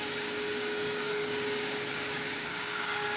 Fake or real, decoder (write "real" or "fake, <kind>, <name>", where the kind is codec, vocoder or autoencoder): fake, codec, DAC